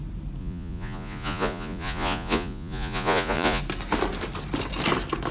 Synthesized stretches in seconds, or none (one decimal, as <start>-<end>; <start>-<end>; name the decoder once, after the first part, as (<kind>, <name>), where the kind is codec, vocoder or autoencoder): 0.4-3.6 (vocoder, Vocos)